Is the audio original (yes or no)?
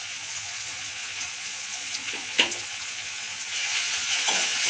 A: no